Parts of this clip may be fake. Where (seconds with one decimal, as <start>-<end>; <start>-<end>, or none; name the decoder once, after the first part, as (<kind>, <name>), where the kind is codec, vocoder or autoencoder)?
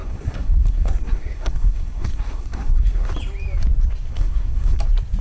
0.0-3.1 (codec, SNAC); 4.1-4.8